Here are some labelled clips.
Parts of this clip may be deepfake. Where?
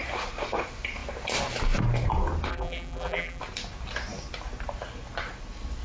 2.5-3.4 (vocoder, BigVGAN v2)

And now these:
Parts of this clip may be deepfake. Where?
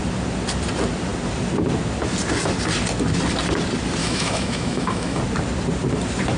4.0-5.2 (autoencoder, DAC-VAE)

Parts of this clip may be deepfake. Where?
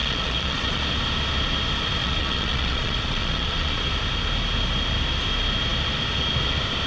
0.0-0.8 (vocoder, Vocos); 2.0-3.8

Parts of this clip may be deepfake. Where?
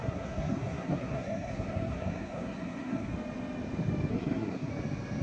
0.0-3.1 (codec, SNAC); 4.1-4.7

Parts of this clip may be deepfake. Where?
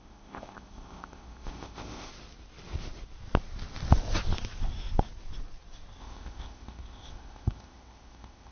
0.0-2.1 (codec, ZipCodec); 6.0-8.5